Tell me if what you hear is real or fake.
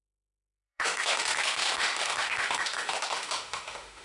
fake